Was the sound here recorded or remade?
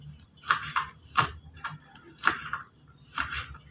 remade